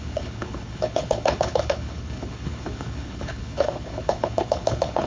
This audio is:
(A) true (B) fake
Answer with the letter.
B